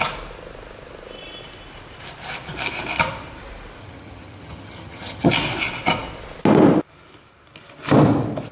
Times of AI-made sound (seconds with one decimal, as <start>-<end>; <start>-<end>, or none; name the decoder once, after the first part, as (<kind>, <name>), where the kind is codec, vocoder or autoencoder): 3.8-5.3 (vocoder, HiFi-GAN)